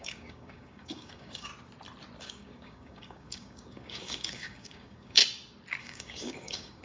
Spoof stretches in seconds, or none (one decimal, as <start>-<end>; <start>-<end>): 0.0-1.5; 2.2-5.2; 5.8-6.8